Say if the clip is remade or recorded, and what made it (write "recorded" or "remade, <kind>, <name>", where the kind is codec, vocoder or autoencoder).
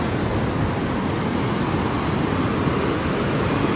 recorded